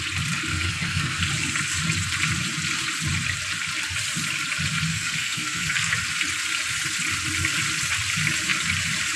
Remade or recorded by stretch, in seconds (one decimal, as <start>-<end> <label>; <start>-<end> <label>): 0.0-0.5 recorded; 0.5-1.2 remade; 1.2-4.9 recorded; 4.9-5.9 remade; 5.9-9.2 recorded